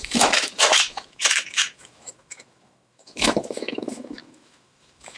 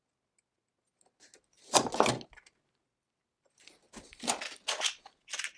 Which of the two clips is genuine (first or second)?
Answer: second